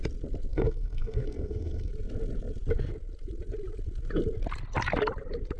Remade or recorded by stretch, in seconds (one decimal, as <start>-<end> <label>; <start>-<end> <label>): 0.0-0.5 recorded; 0.5-1.9 remade; 1.9-5.6 recorded